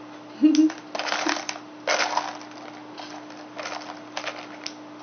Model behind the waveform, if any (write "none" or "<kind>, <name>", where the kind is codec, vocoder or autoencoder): none